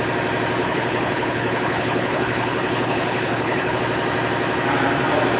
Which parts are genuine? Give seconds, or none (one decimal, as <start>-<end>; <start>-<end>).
0.0-0.6; 3.8-5.4